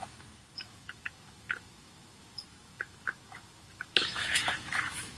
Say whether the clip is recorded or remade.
remade